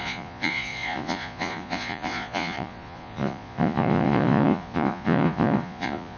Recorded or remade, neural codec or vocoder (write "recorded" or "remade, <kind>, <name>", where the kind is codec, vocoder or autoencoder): remade, vocoder, Vocos